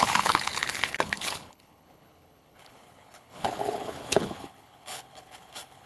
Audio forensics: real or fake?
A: fake